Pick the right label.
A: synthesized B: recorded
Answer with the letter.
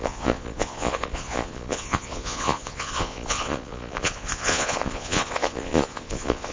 A